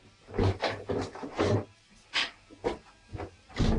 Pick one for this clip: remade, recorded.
recorded